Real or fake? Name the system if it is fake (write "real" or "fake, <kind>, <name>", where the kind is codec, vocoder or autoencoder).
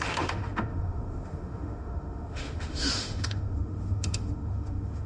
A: fake, autoencoder, DAC-VAE